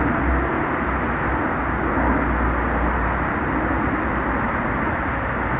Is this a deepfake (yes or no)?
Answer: no